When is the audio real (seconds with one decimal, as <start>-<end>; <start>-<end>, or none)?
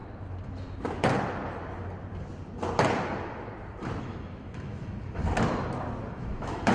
0.0-4.0; 5.2-6.1